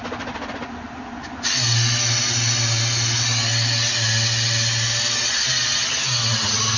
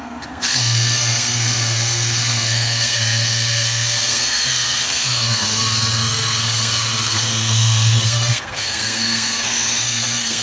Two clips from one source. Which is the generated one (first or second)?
second